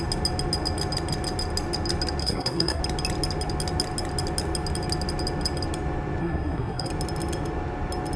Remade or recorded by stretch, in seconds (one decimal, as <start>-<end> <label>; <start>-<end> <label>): 0.0-2.2 recorded; 2.2-2.8 remade; 2.8-6.2 recorded; 6.2-6.9 remade; 6.9-8.2 recorded

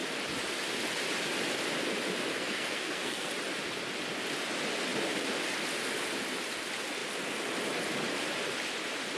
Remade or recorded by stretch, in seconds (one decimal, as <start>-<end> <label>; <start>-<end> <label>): 0.0-2.3 recorded; 2.3-3.3 remade; 3.3-9.2 recorded

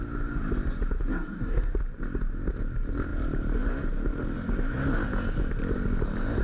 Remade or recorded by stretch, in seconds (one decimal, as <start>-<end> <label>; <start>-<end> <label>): 0.0-1.1 recorded; 1.1-1.7 remade; 1.7-6.4 recorded

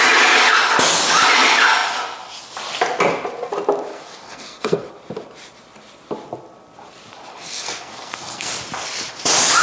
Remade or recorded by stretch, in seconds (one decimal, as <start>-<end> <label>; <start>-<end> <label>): 0.0-3.9 recorded; 3.9-4.9 remade; 4.9-7.3 recorded; 7.3-8.5 remade; 8.5-9.6 recorded

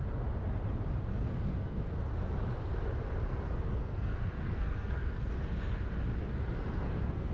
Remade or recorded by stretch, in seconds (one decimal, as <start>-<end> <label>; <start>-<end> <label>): 0.0-1.1 recorded; 1.1-1.9 remade; 1.9-3.3 recorded; 3.3-5.3 remade; 5.3-6.2 recorded; 6.2-7.3 remade

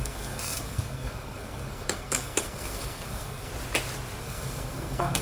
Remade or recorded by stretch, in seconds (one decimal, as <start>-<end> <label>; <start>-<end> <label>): 0.0-3.5 remade; 3.5-4.2 recorded; 4.2-5.2 remade

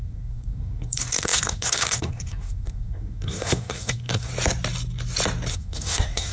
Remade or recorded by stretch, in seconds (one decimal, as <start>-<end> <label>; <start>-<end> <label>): 0.0-4.3 remade; 4.3-5.5 recorded; 5.5-6.3 remade

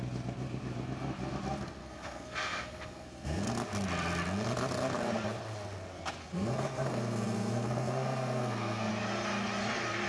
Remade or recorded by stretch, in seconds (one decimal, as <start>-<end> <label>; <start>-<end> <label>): 0.0-1.8 recorded; 1.8-3.5 remade; 3.5-6.2 recorded; 6.2-8.9 remade; 8.9-10.1 recorded